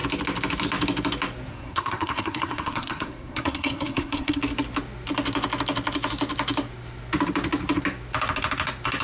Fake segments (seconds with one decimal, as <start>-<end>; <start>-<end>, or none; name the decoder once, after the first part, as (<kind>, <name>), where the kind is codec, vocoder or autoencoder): 1.5-4.4 (codec, SNAC)